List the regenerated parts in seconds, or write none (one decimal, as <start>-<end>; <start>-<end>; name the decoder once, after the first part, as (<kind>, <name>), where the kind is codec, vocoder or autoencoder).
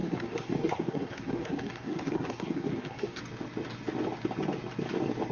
0.0-3.2 (codec, SNAC)